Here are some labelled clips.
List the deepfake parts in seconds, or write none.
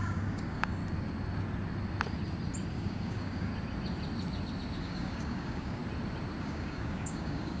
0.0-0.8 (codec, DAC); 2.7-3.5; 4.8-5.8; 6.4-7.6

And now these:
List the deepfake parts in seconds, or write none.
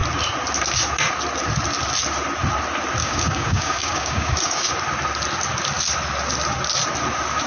3.0-4.7 (codec, DAC)